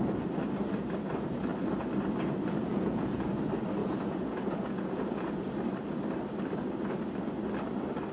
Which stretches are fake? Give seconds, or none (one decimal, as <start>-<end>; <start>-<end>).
2.6-3.4; 3.8-5.5